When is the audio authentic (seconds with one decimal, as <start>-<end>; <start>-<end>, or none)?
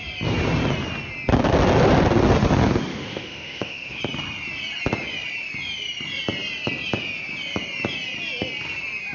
0.0-2.9; 4.0-9.1